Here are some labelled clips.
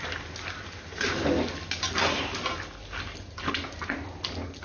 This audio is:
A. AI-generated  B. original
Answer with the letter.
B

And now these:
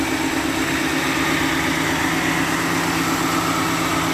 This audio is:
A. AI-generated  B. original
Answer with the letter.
B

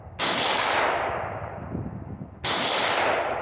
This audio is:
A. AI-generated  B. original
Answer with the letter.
B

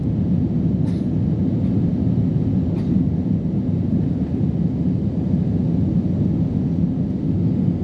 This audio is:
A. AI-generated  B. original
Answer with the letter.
B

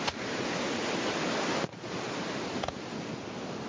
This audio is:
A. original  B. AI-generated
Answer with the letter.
A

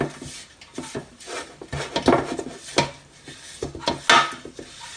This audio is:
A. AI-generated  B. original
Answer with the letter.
B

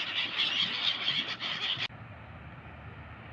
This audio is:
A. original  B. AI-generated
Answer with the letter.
A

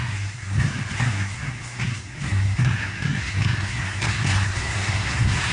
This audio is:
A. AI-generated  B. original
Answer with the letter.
A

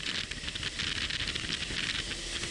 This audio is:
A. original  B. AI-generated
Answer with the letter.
A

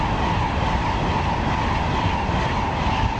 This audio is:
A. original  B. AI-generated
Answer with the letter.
A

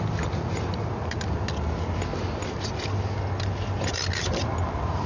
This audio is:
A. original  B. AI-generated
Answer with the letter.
A